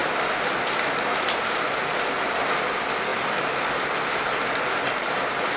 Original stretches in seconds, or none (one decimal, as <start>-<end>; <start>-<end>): 0.0-5.6